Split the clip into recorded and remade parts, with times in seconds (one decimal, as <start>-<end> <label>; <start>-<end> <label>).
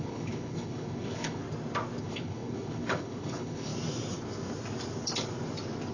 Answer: 0.0-1.4 remade; 1.4-2.0 recorded; 2.0-3.7 remade; 3.7-5.9 recorded